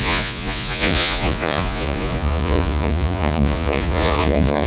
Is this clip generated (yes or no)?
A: yes